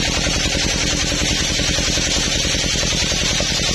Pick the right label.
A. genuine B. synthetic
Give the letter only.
A